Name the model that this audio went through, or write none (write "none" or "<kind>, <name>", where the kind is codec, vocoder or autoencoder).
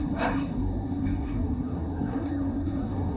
codec, SNAC